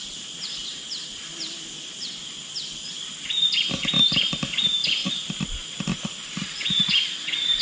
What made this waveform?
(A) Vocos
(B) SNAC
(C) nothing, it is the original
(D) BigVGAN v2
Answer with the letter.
C